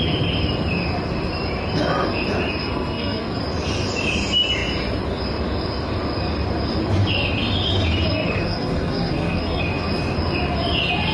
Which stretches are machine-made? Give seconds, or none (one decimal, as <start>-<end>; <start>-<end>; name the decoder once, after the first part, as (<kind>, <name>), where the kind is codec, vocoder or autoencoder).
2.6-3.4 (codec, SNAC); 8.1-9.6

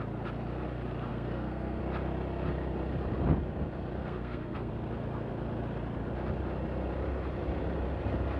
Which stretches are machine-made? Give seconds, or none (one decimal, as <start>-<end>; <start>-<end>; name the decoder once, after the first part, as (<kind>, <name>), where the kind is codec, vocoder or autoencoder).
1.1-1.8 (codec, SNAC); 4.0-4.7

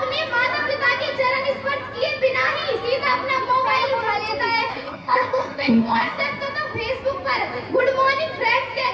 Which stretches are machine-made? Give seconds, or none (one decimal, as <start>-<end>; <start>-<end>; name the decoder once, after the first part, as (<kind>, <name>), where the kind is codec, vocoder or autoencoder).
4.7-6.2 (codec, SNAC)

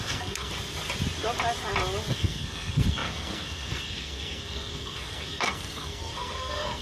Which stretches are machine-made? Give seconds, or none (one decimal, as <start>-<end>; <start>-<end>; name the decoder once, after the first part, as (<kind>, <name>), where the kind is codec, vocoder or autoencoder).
0.0-0.5 (codec, SNAC); 2.1-6.8